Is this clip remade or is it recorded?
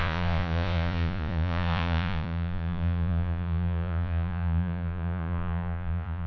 remade